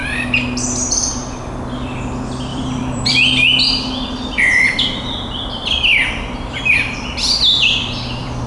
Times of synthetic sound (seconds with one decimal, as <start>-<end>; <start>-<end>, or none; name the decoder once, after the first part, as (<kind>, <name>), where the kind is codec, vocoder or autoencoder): 0.0-1.4 (vocoder, BigVGAN v2); 2.5-3.1; 5.9-8.5